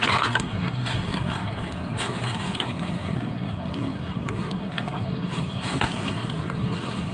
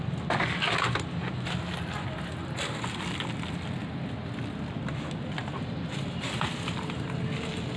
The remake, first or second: first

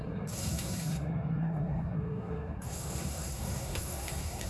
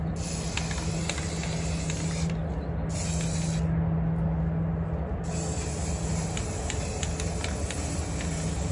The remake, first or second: first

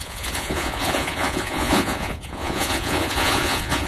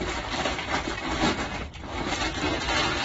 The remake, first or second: first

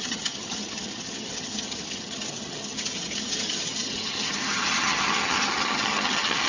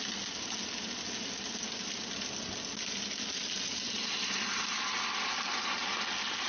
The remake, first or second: first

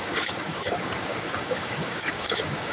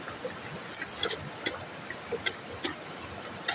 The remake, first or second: first